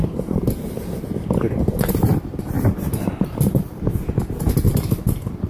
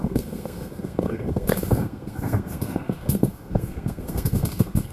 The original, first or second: first